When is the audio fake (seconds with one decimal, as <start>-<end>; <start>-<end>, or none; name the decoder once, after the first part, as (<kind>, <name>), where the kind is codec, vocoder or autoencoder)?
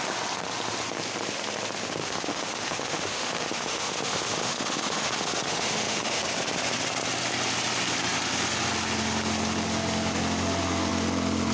2.0-6.2 (autoencoder, DAC-VAE)